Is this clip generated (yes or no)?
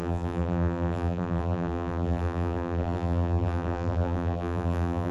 yes